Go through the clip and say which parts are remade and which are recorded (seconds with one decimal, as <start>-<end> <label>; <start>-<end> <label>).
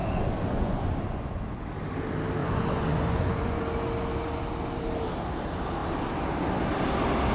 0.0-1.4 remade; 1.4-2.4 recorded; 2.4-3.6 remade; 3.6-7.3 recorded